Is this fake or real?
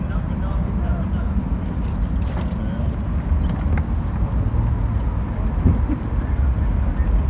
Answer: real